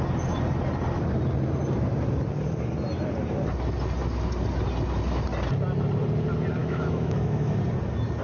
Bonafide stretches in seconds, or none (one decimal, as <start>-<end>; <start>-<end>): 0.0-6.6; 7.6-8.2